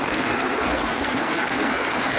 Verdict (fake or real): fake